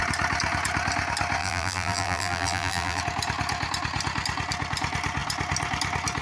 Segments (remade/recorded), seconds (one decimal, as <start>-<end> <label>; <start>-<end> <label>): 0.0-1.4 recorded; 1.4-3.0 remade; 3.0-6.2 recorded